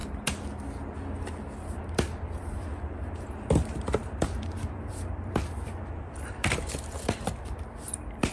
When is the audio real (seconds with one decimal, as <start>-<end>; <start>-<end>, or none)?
0.0-1.7